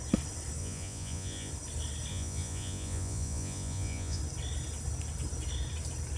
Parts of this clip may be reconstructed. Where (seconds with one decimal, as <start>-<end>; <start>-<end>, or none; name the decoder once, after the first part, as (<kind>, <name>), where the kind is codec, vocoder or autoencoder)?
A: 0.6-1.5 (vocoder, Vocos); 2.1-4.2